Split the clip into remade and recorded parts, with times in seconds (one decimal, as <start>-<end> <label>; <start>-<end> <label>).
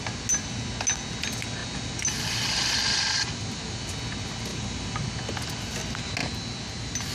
0.0-7.1 recorded